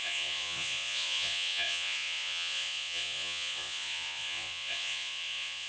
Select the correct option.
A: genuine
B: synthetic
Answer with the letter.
B